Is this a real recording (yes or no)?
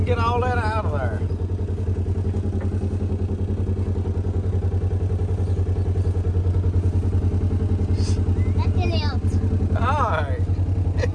yes